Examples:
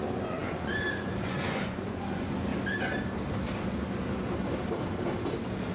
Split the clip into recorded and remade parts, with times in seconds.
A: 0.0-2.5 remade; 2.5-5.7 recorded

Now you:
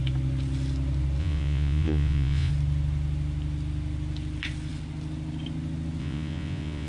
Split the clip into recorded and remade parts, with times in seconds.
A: 0.0-1.2 recorded; 1.2-2.5 remade; 2.5-6.0 recorded; 6.0-6.9 remade

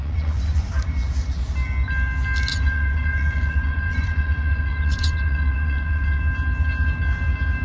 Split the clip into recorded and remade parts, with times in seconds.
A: 0.0-0.7 remade; 0.7-2.5 recorded; 2.5-6.2 remade; 6.2-7.6 recorded

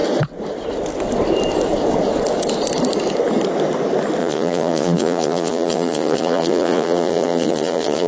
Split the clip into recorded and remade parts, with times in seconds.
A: 0.0-4.2 recorded; 4.2-8.1 remade

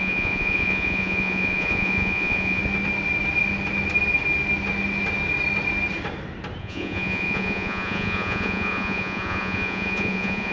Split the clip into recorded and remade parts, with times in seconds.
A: 0.0-2.6 remade; 2.6-6.6 recorded; 6.6-10.5 remade